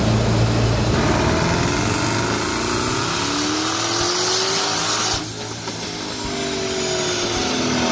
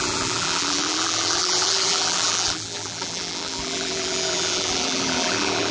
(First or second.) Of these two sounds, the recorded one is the first